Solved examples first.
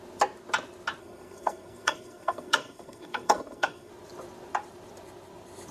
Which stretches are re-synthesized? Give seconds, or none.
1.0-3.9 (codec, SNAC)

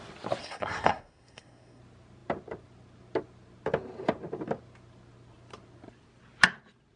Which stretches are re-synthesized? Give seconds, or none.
0.4-1.8 (codec, SNAC)